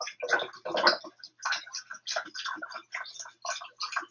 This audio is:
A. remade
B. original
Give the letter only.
B